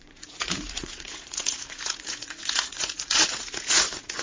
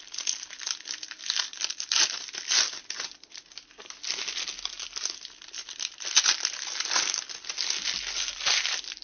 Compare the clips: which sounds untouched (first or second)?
second